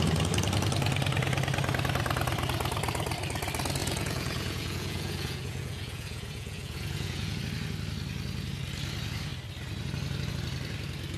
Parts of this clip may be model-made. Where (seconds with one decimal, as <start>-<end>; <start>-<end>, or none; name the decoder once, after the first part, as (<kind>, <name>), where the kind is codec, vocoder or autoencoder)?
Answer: 3.8-7.4 (vocoder, Vocos)